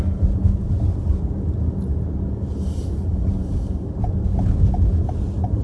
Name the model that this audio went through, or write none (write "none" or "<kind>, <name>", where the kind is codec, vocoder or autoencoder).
none